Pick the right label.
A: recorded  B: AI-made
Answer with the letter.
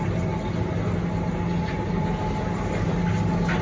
A